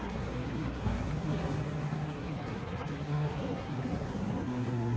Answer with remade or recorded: remade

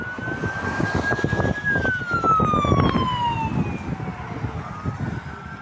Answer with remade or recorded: recorded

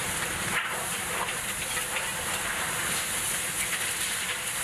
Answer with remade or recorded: recorded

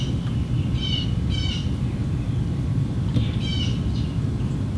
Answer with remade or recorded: recorded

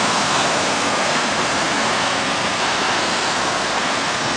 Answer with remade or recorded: remade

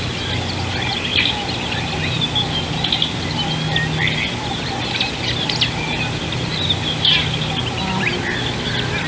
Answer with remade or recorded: recorded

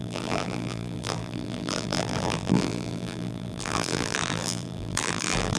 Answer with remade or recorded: remade